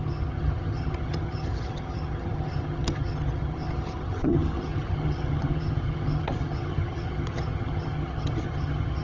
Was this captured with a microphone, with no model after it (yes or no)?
no